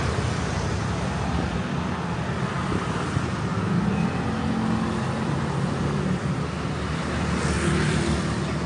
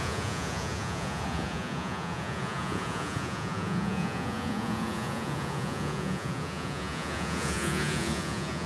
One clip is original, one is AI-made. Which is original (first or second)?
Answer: first